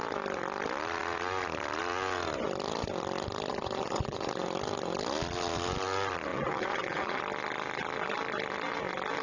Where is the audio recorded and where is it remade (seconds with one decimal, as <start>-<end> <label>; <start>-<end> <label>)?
0.0-3.5 recorded; 3.5-4.3 remade; 4.3-6.3 recorded; 6.3-7.2 remade; 7.2-9.2 recorded